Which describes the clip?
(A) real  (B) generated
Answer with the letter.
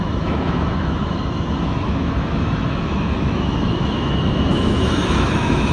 B